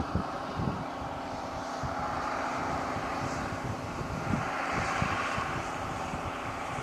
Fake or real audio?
fake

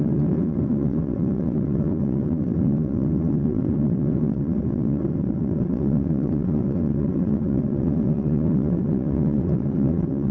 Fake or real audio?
fake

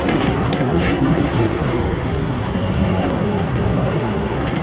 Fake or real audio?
fake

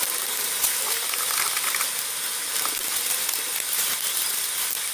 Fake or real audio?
real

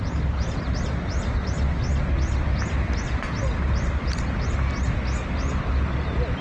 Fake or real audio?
real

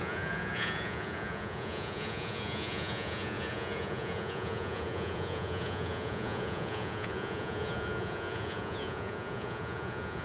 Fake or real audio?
fake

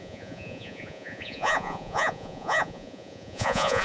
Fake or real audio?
fake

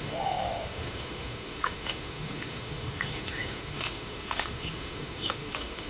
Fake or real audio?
fake